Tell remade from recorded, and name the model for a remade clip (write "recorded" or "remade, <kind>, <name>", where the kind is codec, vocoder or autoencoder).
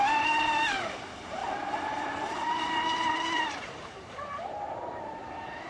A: remade, vocoder, BigVGAN v2